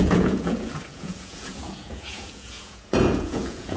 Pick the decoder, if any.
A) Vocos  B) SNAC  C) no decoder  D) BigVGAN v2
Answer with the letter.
A